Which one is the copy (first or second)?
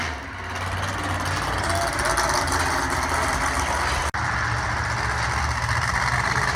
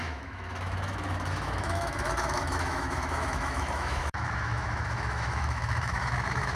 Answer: second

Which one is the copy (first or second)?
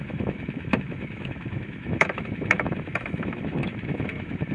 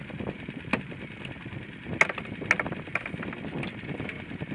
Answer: first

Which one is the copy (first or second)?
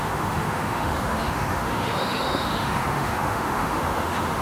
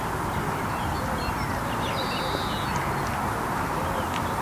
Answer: first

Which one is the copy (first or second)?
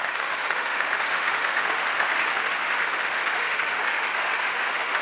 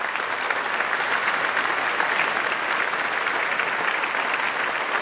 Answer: first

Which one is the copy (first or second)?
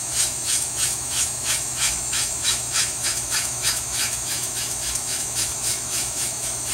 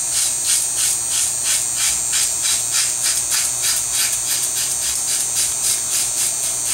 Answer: first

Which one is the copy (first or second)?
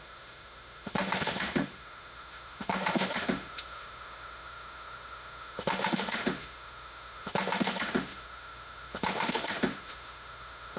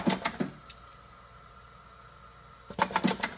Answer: first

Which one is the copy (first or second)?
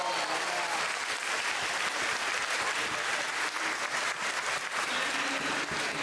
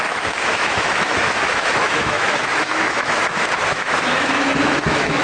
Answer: second